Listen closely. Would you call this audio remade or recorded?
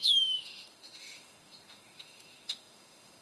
remade